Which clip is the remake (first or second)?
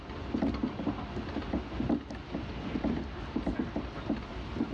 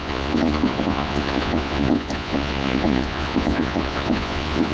second